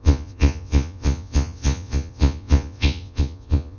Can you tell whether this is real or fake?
fake